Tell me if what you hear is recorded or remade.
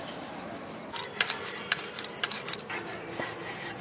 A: recorded